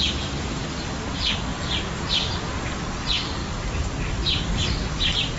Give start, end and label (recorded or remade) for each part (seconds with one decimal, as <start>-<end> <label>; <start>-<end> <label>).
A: 0.0-5.4 remade